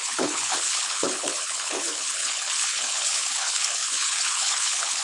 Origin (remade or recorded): remade